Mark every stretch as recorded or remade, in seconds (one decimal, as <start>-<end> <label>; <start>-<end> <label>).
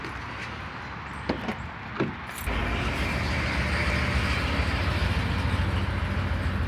0.0-2.6 recorded; 2.6-5.3 remade; 5.3-6.7 recorded